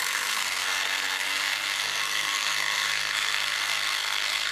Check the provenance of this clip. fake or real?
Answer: fake